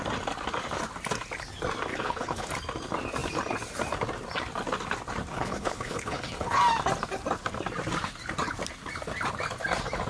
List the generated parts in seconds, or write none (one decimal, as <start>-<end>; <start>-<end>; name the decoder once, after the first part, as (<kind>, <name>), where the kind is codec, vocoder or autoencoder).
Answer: 1.9-2.5 (codec, HILCodec); 5.3-6.6